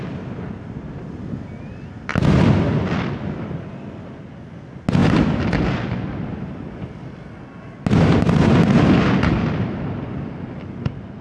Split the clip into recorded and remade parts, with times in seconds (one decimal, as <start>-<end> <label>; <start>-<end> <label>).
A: 0.0-11.2 recorded